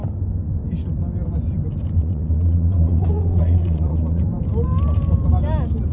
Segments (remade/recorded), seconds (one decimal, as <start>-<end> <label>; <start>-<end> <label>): 0.0-2.0 recorded; 2.0-4.2 remade; 4.2-5.9 recorded